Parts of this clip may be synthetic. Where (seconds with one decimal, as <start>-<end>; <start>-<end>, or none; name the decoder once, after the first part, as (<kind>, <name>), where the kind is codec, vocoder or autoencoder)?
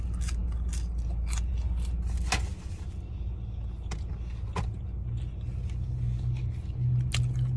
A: none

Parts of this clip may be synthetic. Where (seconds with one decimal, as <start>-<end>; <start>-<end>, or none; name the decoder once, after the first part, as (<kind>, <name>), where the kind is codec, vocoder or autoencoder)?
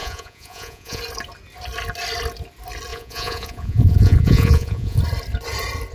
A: 0.0-1.0 (vocoder, Vocos); 2.9-5.0